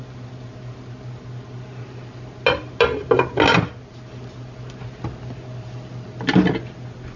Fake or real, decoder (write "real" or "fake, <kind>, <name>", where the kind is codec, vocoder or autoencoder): real